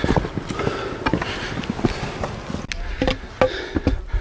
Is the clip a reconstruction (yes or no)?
no